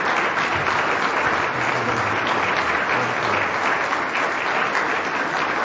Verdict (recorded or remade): recorded